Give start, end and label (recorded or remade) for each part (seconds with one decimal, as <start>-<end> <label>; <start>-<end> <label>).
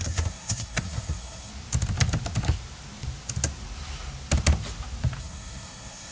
0.0-1.5 remade; 1.5-5.2 recorded; 5.2-6.1 remade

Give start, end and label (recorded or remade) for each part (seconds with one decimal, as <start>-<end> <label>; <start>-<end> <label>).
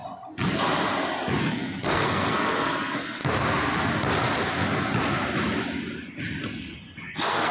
0.0-1.4 recorded; 1.4-3.2 remade; 3.2-7.1 recorded; 7.1-7.5 remade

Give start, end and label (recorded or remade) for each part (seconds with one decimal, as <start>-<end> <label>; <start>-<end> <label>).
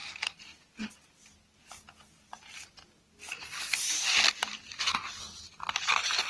0.0-6.3 recorded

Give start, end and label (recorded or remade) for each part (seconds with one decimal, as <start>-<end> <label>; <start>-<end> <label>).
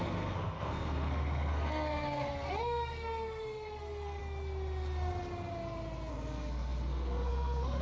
0.0-4.2 remade; 4.2-6.1 recorded; 6.1-7.8 remade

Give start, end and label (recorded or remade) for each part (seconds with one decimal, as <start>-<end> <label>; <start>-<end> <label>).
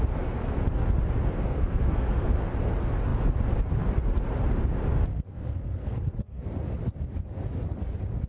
0.0-1.4 recorded; 1.4-2.3 remade; 2.3-5.3 recorded; 5.3-6.4 remade; 6.4-8.3 recorded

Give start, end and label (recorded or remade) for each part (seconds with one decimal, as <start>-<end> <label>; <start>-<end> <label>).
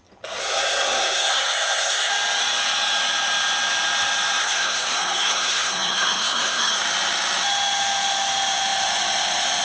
0.0-0.4 recorded; 0.4-2.1 remade; 2.1-4.4 recorded; 4.4-6.8 remade; 6.8-9.6 recorded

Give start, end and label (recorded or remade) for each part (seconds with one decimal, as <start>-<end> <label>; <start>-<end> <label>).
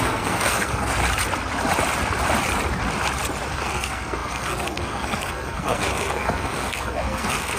0.0-1.0 remade; 1.0-3.5 recorded; 3.5-7.6 remade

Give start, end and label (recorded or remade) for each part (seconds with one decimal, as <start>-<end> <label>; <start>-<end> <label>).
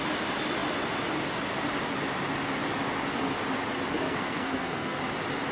0.0-4.0 recorded; 4.0-5.0 remade; 5.0-5.5 recorded